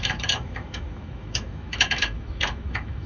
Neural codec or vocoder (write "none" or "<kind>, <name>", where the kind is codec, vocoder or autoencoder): autoencoder, DAC-VAE